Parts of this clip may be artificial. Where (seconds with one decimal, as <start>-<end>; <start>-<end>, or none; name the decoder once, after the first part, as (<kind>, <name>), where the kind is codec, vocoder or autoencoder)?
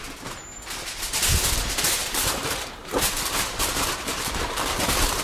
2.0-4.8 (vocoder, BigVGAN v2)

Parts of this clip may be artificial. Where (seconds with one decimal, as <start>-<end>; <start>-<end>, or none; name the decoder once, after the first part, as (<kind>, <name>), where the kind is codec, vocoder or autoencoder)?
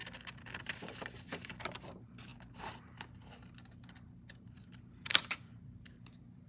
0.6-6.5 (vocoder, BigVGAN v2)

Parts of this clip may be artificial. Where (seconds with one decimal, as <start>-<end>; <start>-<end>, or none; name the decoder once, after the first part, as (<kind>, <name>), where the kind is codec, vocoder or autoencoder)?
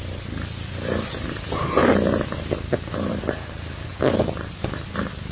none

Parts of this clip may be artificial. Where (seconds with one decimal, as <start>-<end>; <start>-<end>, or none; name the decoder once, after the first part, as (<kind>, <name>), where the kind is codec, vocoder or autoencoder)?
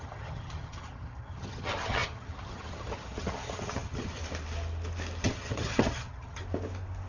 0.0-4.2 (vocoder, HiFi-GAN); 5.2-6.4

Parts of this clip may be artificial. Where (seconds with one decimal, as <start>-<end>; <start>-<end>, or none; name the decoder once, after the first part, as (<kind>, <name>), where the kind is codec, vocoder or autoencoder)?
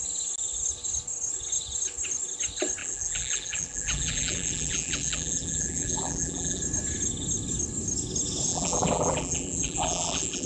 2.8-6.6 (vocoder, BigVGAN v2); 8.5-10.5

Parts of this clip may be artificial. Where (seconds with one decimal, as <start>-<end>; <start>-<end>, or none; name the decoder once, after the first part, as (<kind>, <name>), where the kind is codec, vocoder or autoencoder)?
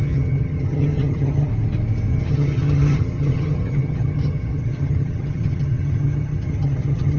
0.0-1.5 (vocoder, HiFi-GAN); 2.1-7.2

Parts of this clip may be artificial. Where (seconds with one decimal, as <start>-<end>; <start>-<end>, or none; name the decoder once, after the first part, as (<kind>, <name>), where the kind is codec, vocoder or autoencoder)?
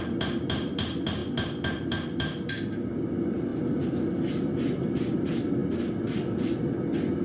none